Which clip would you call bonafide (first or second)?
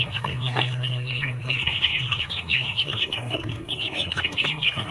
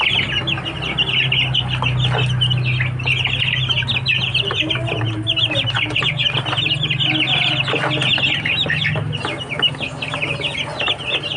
second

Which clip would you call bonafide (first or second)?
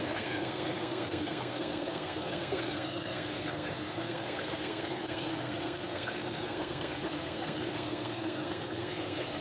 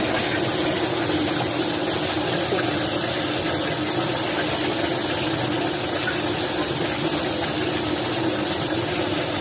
second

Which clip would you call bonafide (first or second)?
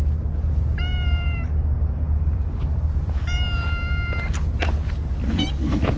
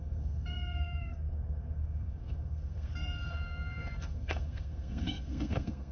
first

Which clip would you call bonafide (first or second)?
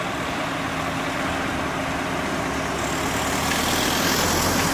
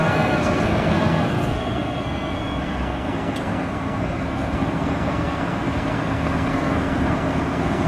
first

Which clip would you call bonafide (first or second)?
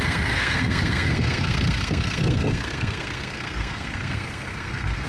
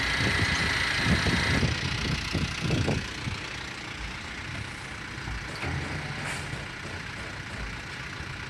second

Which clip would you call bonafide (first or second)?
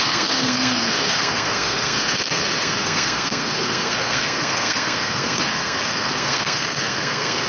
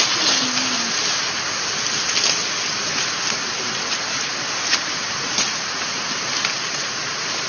second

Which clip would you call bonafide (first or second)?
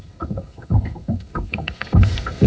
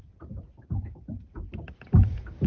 second